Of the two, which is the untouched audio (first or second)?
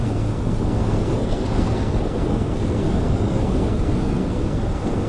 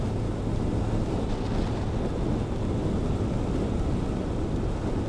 second